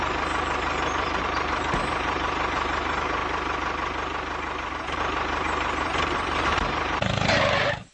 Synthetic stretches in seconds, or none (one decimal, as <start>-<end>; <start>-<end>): 0.0-3.2; 4.7-7.9